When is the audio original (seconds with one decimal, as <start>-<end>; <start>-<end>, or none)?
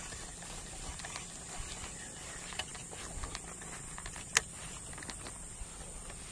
0.0-6.3